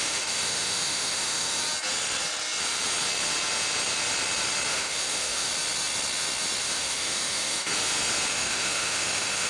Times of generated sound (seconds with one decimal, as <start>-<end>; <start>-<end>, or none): 0.0-1.6; 4.7-5.5; 6.6-7.7; 8.3-9.5